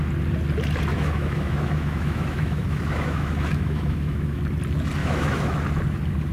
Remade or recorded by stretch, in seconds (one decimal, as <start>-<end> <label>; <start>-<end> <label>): 0.0-0.9 recorded; 0.9-4.4 remade; 4.4-5.0 recorded; 5.0-5.6 remade; 5.6-6.3 recorded